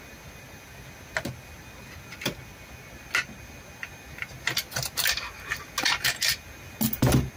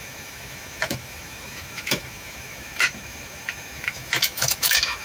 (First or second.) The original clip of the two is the first